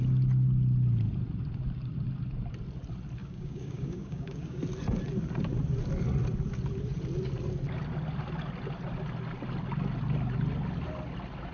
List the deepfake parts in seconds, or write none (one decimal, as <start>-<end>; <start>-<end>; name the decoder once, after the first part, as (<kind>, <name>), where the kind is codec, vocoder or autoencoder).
3.2-4.6 (codec, DAC)